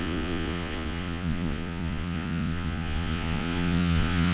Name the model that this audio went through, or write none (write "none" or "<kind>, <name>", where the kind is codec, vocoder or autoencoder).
vocoder, Vocos